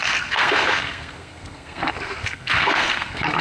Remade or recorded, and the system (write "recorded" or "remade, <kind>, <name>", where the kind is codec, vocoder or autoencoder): remade, codec, SNAC